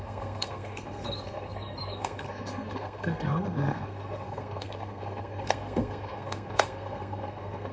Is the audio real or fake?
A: fake